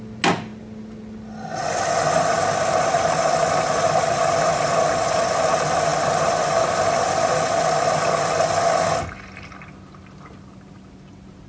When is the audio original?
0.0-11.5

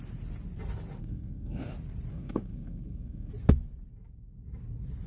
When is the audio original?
0.0-1.0; 1.7-2.1; 3.3-5.1

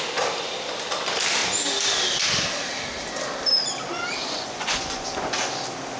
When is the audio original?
0.0-4.2; 5.1-6.0

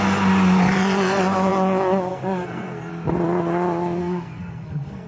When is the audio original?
0.0-2.1; 2.9-4.0

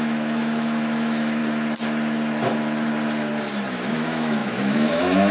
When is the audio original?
1.4-3.7

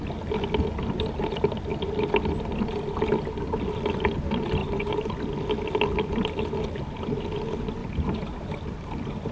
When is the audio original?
0.0-4.6; 5.2-7.8